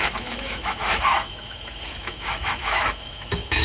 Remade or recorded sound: remade